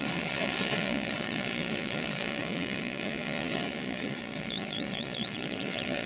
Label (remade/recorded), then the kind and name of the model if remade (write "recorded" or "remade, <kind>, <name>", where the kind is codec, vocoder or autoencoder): remade, vocoder, Vocos